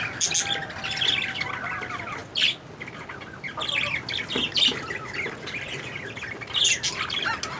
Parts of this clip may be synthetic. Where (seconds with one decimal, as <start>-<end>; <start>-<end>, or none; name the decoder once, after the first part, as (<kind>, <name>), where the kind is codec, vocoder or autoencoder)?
none